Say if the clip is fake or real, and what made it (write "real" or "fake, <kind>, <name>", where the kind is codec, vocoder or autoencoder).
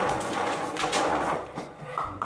fake, vocoder, Vocos